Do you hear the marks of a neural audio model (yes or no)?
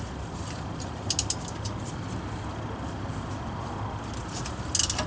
no